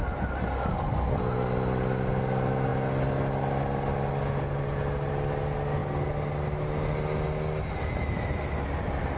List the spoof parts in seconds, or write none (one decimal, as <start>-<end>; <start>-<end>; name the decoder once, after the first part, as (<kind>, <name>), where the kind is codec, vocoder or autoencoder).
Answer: none